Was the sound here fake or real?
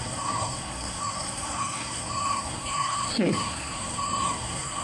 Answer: fake